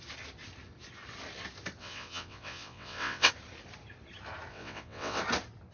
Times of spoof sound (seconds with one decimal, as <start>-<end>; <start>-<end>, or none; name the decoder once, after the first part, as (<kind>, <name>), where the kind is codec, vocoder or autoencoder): 1.8-3.3 (vocoder, WaveNeXt); 4.5-5.2